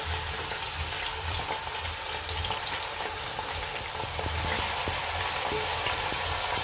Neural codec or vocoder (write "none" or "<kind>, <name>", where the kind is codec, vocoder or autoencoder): vocoder, BigVGAN v2